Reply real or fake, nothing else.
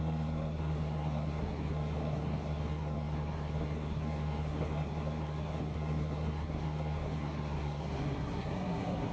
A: fake